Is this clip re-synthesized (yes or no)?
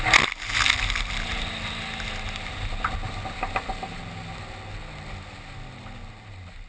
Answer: no